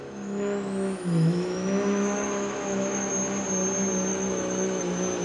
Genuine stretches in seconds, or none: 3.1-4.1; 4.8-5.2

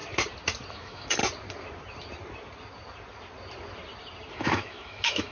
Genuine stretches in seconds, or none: 0.0-0.7; 1.2-4.3

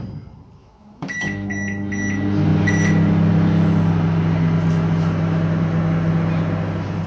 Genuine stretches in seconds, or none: 0.0-0.6; 1.5-7.1

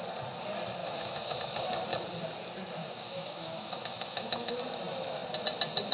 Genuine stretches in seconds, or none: 0.0-0.8; 1.4-2.8; 4.5-5.9

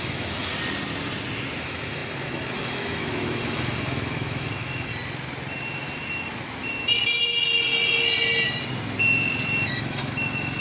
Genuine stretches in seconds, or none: 0.5-1.6; 4.9-9.7

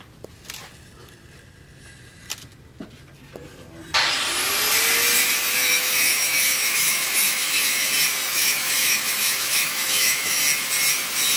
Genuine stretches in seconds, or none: 0.0-5.6; 7.9-8.3; 10.4-11.4